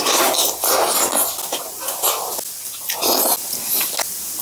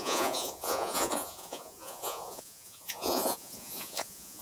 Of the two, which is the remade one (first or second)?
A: second